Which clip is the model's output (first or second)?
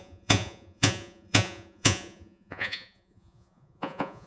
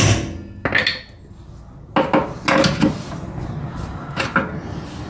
first